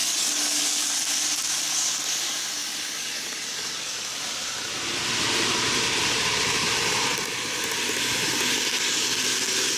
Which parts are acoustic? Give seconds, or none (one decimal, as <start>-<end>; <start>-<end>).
0.9-2.6; 4.2-9.8